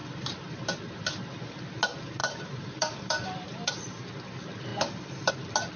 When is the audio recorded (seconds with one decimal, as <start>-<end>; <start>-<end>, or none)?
0.0-2.2; 3.7-5.8